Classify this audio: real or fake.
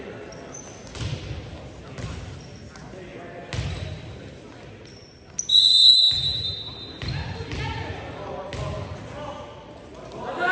real